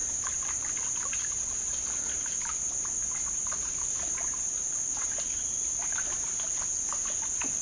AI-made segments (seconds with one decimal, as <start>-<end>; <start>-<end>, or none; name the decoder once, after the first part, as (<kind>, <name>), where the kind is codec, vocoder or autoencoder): none